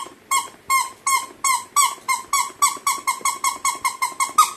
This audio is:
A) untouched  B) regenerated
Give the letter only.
A